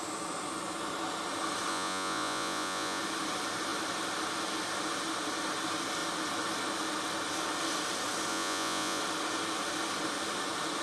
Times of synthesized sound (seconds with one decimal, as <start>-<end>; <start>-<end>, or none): 1.7-3.0; 8.3-9.0

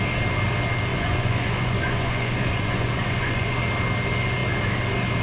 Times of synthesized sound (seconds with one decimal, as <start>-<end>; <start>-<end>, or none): 0.9-3.6

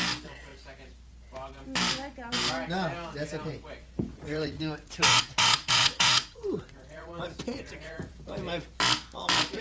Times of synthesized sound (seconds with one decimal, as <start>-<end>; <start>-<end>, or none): 4.1-8.1

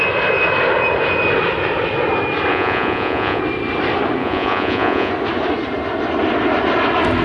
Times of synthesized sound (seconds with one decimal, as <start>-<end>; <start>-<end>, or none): 2.5-3.4; 4.2-5.1

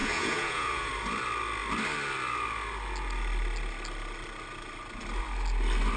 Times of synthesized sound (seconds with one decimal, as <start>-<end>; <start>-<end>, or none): 0.0-0.9

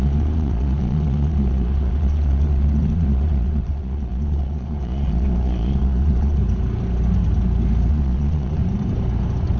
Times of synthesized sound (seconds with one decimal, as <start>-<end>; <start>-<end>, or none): 0.0-6.4; 7.9-8.6